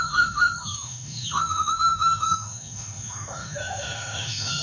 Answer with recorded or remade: remade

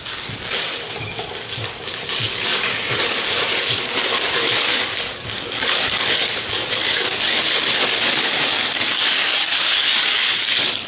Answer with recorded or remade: remade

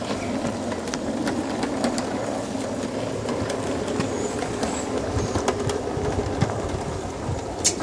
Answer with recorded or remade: recorded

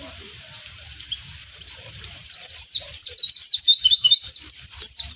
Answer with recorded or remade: remade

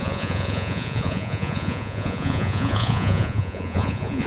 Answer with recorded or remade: remade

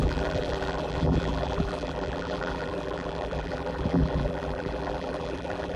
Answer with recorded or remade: remade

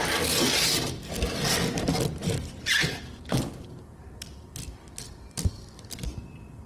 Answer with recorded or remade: remade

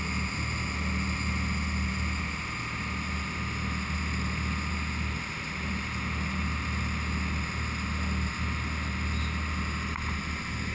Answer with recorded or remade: recorded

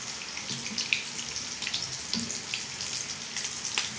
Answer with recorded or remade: recorded